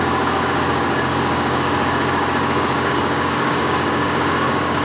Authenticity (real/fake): fake